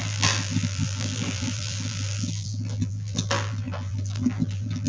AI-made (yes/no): yes